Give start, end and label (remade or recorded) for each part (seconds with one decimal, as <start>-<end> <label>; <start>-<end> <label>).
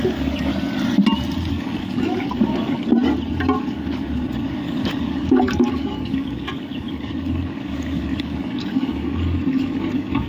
0.0-0.5 remade; 0.5-1.5 recorded; 1.5-2.9 remade; 2.9-3.6 recorded; 3.6-10.3 remade